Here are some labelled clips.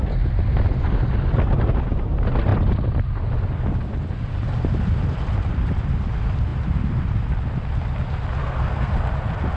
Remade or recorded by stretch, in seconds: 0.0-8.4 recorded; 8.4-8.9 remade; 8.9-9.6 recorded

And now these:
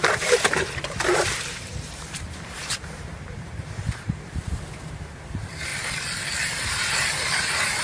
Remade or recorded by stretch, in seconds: 0.0-5.7 remade; 5.7-6.5 recorded; 6.5-7.8 remade

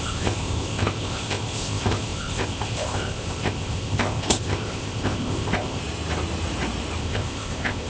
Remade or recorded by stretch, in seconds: 0.0-5.8 remade; 5.8-7.0 recorded; 7.0-7.9 remade

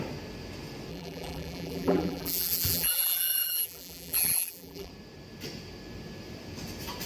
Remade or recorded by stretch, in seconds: 0.0-0.9 recorded; 0.9-4.9 remade; 4.9-7.1 recorded

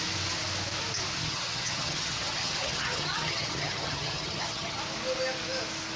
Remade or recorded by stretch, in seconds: 0.0-1.2 recorded; 1.2-4.8 remade; 4.8-6.0 recorded

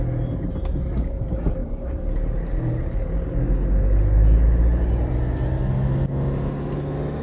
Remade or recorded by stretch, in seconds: 0.0-7.2 recorded